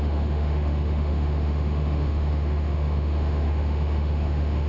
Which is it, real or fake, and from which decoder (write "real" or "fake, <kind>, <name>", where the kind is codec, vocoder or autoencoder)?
fake, autoencoder, DAC-VAE